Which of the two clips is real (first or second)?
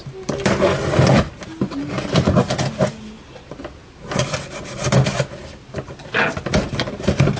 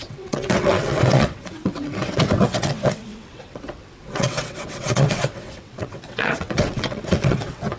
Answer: first